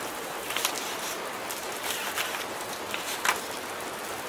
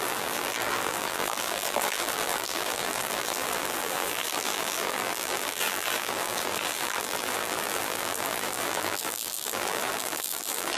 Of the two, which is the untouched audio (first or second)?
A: first